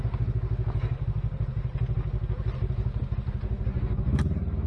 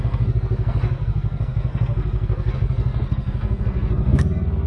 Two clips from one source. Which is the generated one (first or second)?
second